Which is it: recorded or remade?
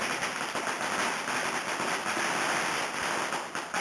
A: recorded